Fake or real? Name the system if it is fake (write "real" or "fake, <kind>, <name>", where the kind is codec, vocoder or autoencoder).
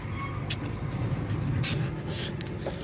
real